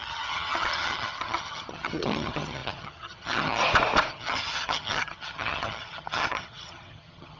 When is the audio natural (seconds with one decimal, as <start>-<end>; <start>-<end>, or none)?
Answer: 3.6-4.1